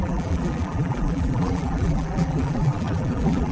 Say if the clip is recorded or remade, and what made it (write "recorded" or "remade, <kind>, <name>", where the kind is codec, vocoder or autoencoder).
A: remade, vocoder, BigVGAN v2